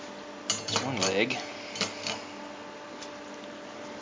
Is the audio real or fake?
real